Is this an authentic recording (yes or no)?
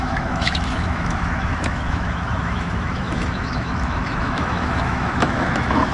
no